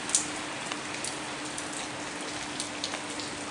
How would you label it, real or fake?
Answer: real